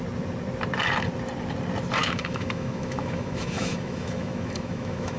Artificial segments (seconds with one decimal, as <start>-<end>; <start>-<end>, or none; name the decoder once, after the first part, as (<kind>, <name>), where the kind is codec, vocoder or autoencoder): 2.0-5.2 (autoencoder, DAC-VAE)